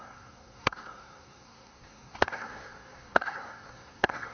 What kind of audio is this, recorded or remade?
remade